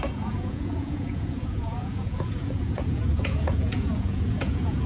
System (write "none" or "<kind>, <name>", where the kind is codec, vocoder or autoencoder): vocoder, Vocos